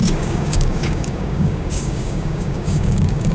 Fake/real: fake